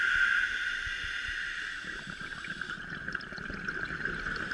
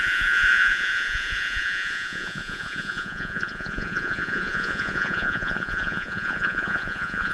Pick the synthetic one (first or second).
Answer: second